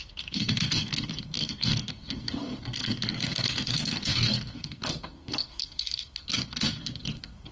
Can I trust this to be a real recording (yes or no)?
no